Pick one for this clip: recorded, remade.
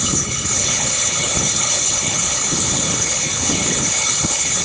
remade